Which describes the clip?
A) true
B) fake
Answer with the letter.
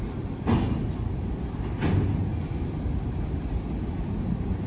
A